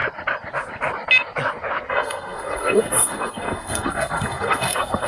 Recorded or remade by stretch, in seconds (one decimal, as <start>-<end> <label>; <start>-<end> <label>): 0.0-1.9 recorded; 1.9-5.1 remade